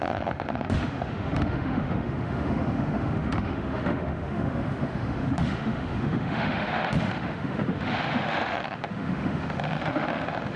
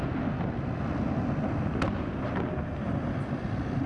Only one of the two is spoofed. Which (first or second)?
first